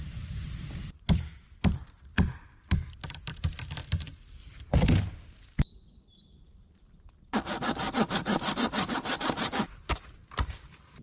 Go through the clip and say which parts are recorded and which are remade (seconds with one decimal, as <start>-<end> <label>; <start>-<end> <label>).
0.0-2.1 remade; 2.1-3.3 recorded; 3.3-4.5 remade; 4.5-8.5 recorded; 8.5-11.0 remade